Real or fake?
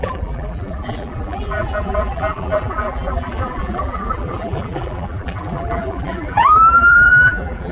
fake